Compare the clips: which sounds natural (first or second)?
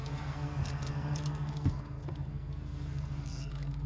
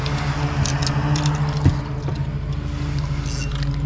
second